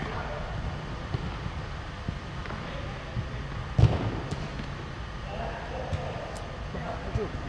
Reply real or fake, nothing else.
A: real